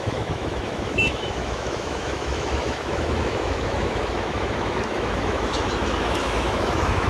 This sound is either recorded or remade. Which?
remade